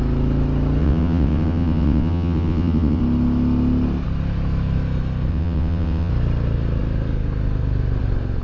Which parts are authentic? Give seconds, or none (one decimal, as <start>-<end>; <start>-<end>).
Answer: 0.0-0.8; 3.0-5.3; 6.1-8.4